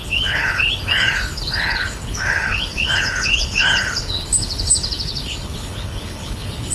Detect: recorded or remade remade